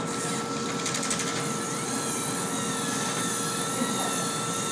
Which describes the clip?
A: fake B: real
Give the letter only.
B